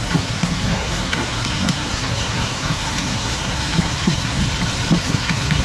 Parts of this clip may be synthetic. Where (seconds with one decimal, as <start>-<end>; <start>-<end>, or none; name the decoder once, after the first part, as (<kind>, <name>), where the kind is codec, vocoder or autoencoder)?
0.0-4.4 (codec, SNAC); 5.0-5.6